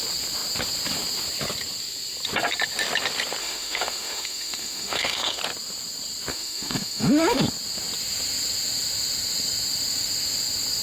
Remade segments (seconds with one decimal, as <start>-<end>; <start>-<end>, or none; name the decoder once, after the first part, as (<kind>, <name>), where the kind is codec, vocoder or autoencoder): 3.4-5.4 (autoencoder, DAC-VAE); 6.3-7.4